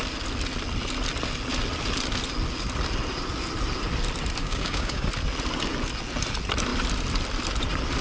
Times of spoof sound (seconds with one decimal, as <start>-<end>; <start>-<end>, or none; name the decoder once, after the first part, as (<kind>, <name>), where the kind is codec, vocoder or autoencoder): 4.4-5.1 (codec, DAC)

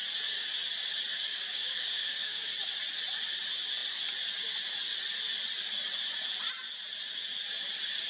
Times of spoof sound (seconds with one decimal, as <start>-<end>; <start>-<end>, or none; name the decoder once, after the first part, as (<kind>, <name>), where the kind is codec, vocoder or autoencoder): 1.3-2.5 (codec, DAC)

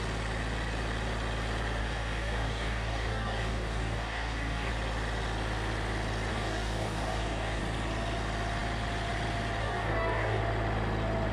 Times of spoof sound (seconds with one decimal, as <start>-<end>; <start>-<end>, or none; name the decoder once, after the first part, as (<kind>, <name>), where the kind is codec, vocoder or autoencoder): 1.8-4.7 (codec, DAC); 6.3-7.6; 9.6-10.4

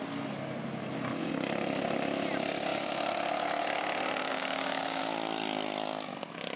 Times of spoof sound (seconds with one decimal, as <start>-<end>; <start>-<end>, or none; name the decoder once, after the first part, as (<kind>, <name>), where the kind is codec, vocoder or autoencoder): 4.3-5.0 (codec, DAC)